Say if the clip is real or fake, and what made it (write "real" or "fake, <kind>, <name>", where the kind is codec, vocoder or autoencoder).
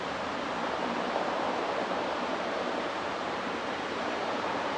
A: fake, vocoder, BigVGAN v2